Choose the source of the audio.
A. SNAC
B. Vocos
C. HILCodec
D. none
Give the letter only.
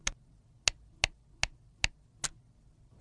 D